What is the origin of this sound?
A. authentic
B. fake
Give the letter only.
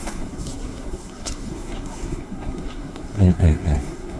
B